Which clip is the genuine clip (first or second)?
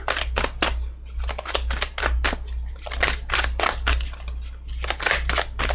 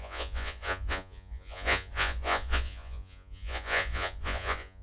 first